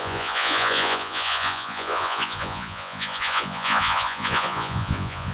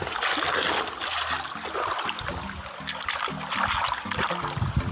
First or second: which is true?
second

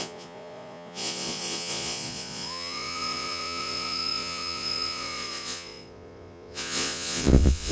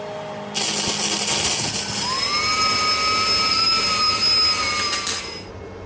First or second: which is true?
second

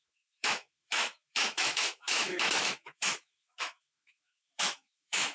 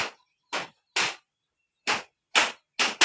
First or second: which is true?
second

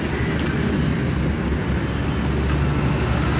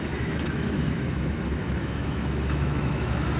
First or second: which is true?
first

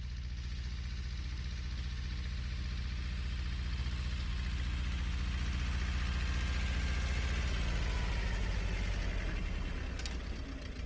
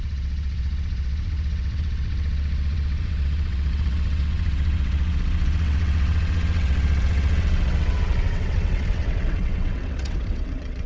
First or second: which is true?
first